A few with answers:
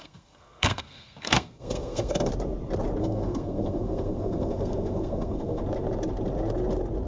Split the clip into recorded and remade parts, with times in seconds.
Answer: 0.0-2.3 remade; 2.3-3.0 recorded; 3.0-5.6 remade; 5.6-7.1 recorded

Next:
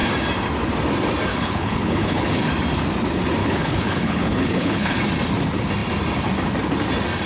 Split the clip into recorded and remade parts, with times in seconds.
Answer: 0.0-1.3 recorded; 1.3-2.4 remade; 2.4-3.4 recorded; 3.4-5.0 remade; 5.0-7.3 recorded

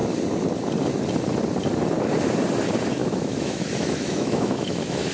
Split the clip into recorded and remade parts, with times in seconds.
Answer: 0.0-3.0 recorded; 3.0-5.1 remade

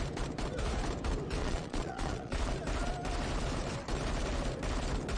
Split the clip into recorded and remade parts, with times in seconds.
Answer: 0.0-1.4 recorded; 1.4-2.5 remade; 2.5-5.2 recorded